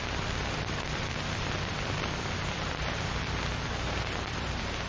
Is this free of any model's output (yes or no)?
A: no